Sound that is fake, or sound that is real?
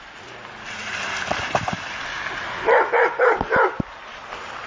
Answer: real